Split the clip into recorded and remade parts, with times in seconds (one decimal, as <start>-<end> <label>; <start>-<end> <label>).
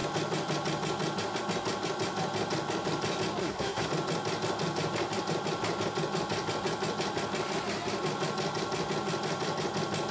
0.0-3.4 recorded; 3.4-3.9 remade; 3.9-10.1 recorded